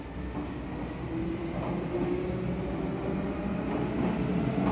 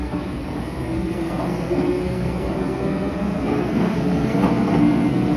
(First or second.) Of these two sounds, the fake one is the second